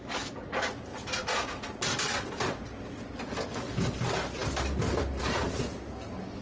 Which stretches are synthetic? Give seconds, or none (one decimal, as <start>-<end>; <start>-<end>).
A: 0.9-1.7